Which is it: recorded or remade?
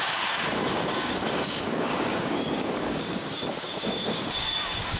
remade